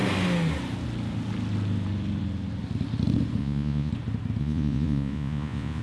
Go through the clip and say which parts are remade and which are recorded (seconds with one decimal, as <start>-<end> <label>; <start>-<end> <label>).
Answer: 0.0-3.4 recorded; 3.4-3.9 remade; 3.9-4.4 recorded; 4.4-5.8 remade